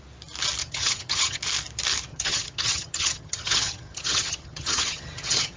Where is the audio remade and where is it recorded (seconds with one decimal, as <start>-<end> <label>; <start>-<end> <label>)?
0.0-0.6 recorded; 0.6-1.4 remade; 1.4-2.1 recorded; 2.1-5.6 remade